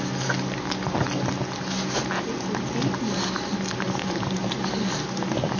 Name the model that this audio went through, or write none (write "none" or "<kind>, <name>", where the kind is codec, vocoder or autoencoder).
none